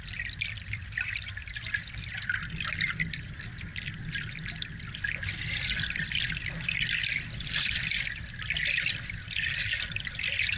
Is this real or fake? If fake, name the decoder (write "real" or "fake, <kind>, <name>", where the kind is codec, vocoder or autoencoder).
real